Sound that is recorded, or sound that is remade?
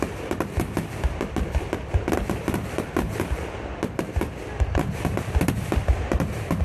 remade